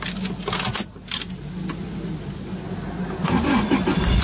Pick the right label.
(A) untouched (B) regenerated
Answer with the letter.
A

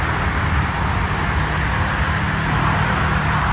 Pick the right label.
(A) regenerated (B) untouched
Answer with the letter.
B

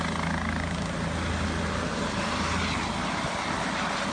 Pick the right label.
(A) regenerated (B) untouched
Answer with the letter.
B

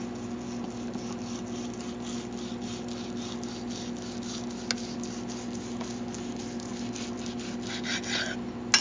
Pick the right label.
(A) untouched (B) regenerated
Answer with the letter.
A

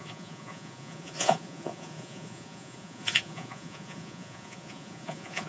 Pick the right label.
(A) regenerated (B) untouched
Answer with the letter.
A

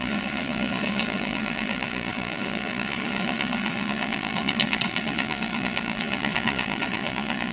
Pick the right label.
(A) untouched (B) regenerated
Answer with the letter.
B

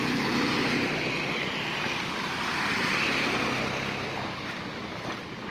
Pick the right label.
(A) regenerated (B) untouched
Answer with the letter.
B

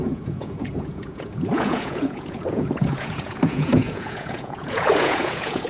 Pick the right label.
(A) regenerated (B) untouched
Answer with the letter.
A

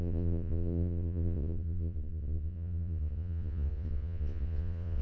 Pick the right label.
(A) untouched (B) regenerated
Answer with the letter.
B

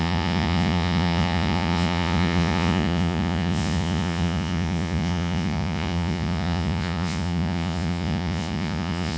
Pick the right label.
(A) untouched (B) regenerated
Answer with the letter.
B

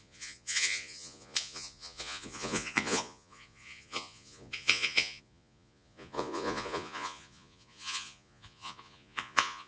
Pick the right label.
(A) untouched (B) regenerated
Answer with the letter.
B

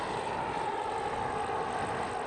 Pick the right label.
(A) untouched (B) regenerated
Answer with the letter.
A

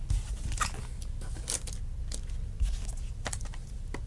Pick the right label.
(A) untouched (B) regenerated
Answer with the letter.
A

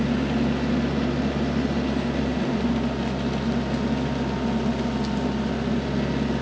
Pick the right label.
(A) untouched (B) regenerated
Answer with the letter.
A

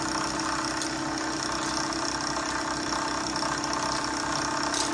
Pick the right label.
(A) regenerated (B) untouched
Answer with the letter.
B